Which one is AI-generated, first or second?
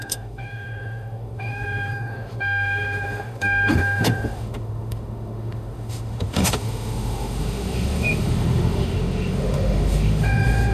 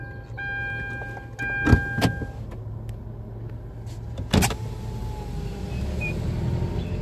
first